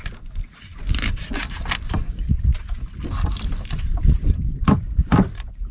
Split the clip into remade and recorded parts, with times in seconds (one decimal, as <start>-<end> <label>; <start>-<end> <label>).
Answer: 0.0-5.7 recorded